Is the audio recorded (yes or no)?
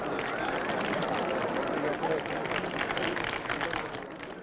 yes